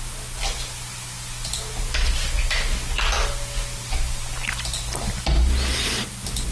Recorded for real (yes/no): yes